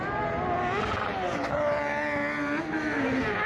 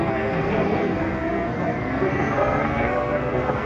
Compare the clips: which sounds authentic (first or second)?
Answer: first